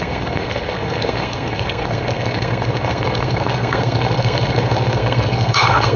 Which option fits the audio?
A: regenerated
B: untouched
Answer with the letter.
A